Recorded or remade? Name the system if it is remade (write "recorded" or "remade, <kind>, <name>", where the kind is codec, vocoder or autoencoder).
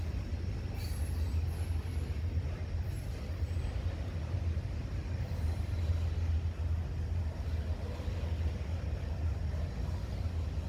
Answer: recorded